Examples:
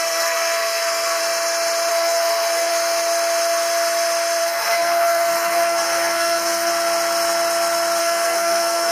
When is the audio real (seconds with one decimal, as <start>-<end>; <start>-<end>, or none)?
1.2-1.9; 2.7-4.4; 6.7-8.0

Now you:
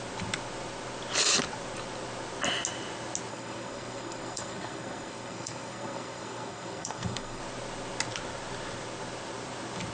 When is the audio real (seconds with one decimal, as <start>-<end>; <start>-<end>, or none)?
0.0-3.3; 7.4-9.9

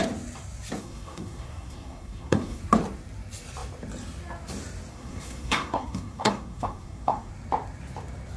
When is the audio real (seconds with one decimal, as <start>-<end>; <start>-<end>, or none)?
0.0-0.8; 2.6-4.9; 7.3-8.4

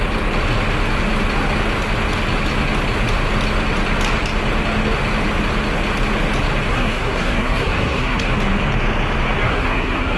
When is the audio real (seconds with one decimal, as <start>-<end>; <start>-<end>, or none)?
0.0-6.7; 8.3-9.5

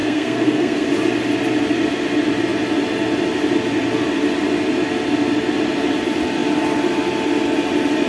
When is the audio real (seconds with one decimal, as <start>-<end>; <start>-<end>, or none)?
0.9-8.1

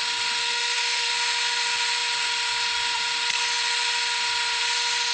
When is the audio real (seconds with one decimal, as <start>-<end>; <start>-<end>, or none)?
0.0-0.4; 1.1-5.1